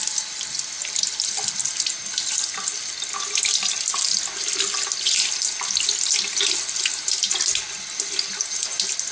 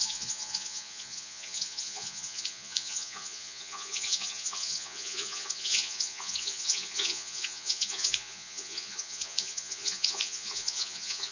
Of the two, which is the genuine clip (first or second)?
first